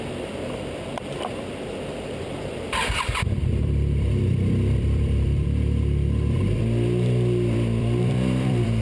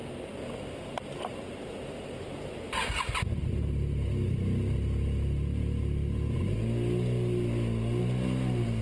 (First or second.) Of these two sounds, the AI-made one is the first